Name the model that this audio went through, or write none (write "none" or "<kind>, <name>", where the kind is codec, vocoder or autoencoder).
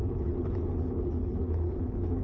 codec, HILCodec